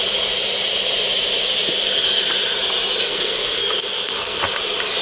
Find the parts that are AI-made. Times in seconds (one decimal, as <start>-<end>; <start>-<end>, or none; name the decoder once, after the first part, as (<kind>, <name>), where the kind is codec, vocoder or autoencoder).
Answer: 3.0-4.4 (codec, SNAC)